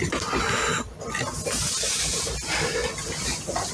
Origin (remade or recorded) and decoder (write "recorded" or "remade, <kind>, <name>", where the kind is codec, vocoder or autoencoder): recorded